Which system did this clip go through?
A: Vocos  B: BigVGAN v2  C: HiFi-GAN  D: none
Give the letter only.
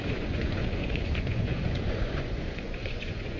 A